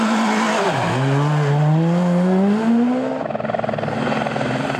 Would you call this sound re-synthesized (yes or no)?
no